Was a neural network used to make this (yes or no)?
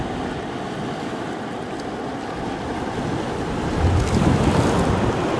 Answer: no